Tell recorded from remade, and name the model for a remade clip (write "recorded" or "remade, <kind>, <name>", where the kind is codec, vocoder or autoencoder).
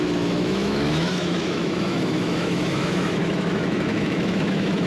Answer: remade, autoencoder, DAC-VAE